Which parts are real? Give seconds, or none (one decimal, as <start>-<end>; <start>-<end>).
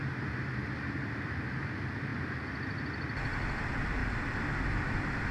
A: 0.0-5.3